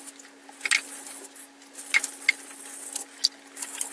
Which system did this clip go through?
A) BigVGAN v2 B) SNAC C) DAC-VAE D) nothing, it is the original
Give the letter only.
D